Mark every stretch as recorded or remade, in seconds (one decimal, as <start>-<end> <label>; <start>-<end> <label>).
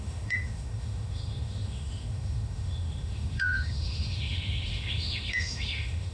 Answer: 0.0-6.1 remade